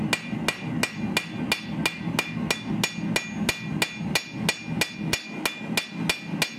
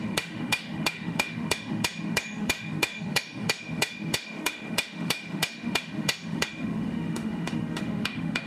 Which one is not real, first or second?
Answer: second